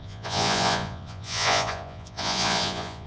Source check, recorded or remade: remade